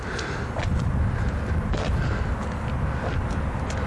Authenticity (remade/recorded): recorded